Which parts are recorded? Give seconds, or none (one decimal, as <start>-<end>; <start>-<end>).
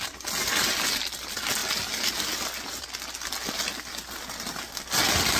0.0-5.4